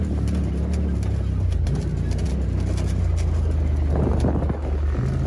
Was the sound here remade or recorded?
recorded